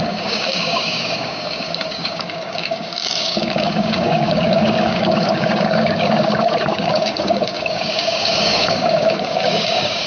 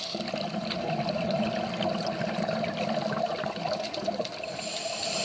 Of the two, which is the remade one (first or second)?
first